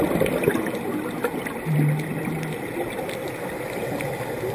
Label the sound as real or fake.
real